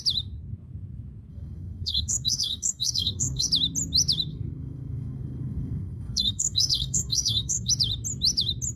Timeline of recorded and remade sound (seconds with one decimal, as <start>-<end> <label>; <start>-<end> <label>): 0.0-1.3 recorded; 1.3-3.5 remade; 3.5-4.3 recorded; 4.3-7.7 remade; 7.7-8.8 recorded